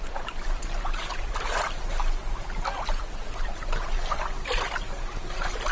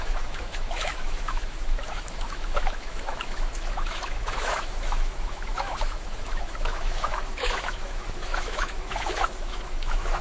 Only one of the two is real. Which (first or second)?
first